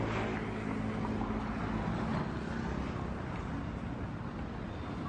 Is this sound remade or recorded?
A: recorded